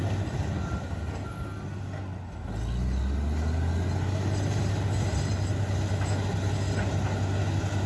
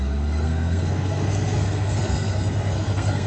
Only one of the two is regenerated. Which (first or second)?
second